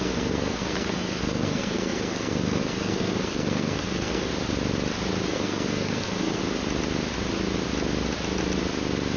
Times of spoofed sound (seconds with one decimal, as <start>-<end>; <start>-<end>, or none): 0.0-4.3; 5.3-6.4